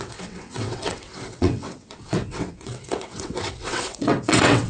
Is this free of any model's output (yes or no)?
no